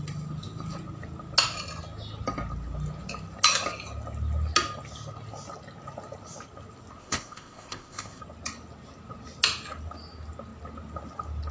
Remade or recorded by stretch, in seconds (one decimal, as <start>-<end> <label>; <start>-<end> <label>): 0.0-7.0 recorded; 7.0-8.2 remade; 8.2-11.5 recorded